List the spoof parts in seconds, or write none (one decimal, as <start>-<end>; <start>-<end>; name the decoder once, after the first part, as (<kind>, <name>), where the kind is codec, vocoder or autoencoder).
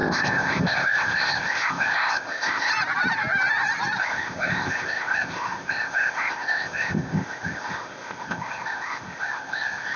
0.0-2.7 (codec, ZipCodec); 4.0-10.0